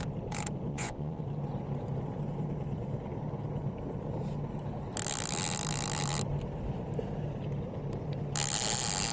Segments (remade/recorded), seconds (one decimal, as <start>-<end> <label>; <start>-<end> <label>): 0.0-0.7 recorded; 0.7-1.2 remade; 1.2-9.1 recorded